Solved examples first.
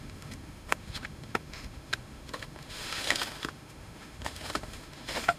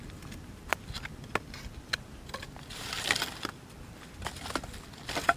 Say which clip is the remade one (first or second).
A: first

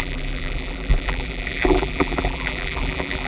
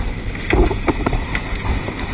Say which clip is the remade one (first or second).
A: first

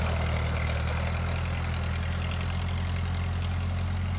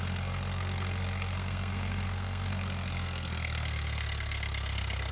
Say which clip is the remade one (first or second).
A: second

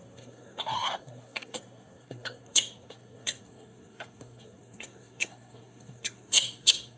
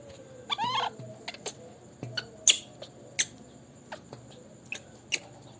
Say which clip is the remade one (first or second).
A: first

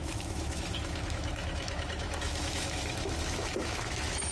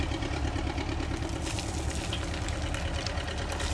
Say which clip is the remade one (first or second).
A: first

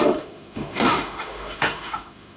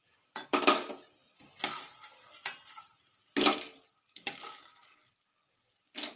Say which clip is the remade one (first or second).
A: first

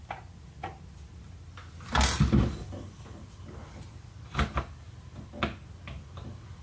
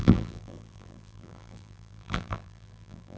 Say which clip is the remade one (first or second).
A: second